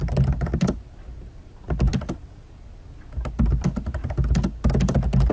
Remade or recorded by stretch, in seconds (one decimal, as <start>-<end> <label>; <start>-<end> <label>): 0.0-5.3 recorded